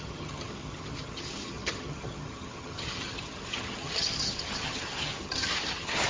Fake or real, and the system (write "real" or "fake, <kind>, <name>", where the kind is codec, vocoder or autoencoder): fake, vocoder, HiFi-GAN